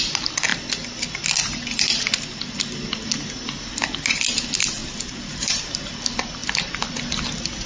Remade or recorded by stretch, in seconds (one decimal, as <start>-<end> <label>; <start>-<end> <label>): 0.0-4.8 recorded; 4.8-5.6 remade; 5.6-6.4 recorded; 6.4-7.0 remade; 7.0-7.7 recorded